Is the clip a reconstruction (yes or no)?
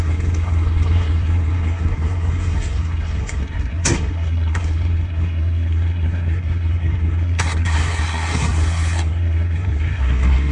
yes